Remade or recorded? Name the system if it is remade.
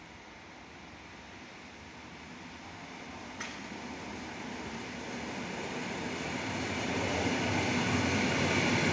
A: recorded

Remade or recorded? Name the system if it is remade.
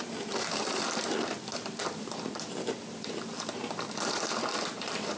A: remade, vocoder, BigVGAN v2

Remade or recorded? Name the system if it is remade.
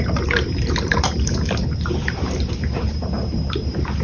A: remade, vocoder, BigVGAN v2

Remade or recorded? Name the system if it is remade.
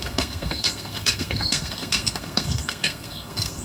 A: remade, codec, SNAC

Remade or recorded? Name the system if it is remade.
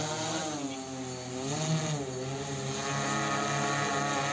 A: recorded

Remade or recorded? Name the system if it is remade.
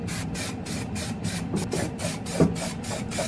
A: remade, vocoder, BigVGAN v2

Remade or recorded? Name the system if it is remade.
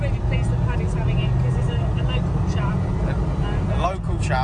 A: recorded